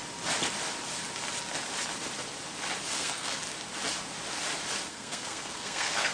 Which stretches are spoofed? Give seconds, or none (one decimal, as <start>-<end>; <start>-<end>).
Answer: 2.9-3.4; 4.9-6.1